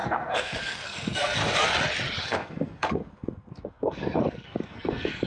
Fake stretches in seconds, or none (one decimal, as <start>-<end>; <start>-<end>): 0.0-1.4; 2.2-5.3